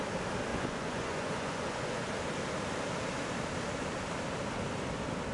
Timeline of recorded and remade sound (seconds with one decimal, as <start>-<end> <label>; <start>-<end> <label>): 0.0-0.5 recorded; 0.5-2.1 remade; 2.1-5.3 recorded